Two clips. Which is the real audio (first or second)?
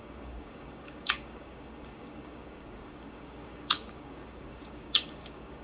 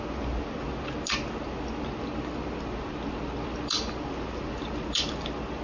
second